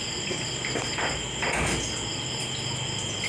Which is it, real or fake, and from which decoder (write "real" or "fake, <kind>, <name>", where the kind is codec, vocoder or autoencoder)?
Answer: real